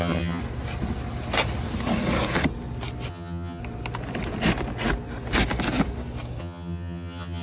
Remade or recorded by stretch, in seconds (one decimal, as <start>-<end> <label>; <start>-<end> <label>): 0.0-0.4 remade; 0.4-3.1 recorded; 3.1-3.6 remade; 3.6-6.4 recorded; 6.4-7.4 remade